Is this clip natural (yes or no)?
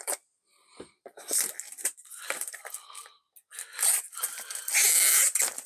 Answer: yes